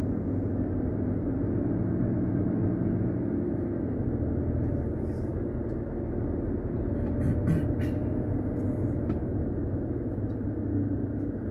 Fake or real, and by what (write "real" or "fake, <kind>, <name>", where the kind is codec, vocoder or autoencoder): real